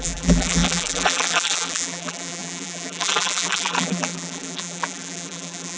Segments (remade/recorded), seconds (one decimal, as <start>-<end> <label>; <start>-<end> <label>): 0.0-5.8 remade